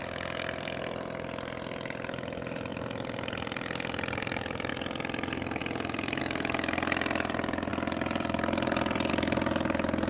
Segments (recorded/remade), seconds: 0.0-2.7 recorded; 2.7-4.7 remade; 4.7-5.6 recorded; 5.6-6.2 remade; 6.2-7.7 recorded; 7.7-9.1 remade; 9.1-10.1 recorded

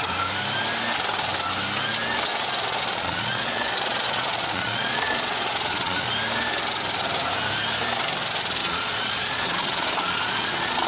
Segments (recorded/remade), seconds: 0.0-2.3 recorded; 2.3-6.1 remade; 6.1-8.6 recorded; 8.6-10.9 remade

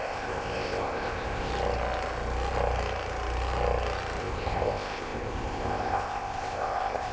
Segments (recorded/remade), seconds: 0.0-1.5 remade; 1.5-4.2 recorded; 4.2-7.1 remade

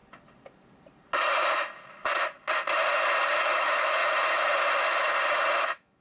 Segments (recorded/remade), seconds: 0.0-3.4 recorded; 3.4-4.0 remade; 4.0-5.6 recorded; 5.6-6.0 remade

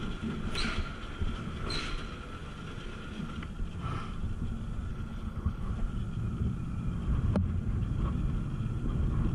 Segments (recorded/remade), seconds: 0.0-4.9 recorded; 4.9-5.7 remade; 5.7-9.3 recorded

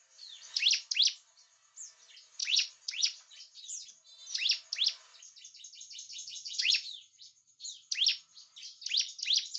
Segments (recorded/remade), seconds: 0.0-2.4 recorded; 2.4-3.9 remade; 3.9-6.1 recorded; 6.1-6.7 remade; 6.7-9.6 recorded

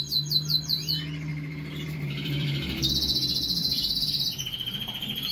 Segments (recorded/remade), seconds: 0.0-1.3 recorded; 1.3-2.9 remade; 2.9-3.6 recorded; 3.6-5.3 remade